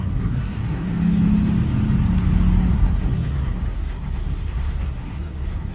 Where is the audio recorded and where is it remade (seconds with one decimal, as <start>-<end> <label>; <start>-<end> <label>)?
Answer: 0.0-0.9 remade; 0.9-2.7 recorded; 2.7-5.7 remade